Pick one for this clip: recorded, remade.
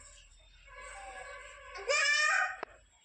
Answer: remade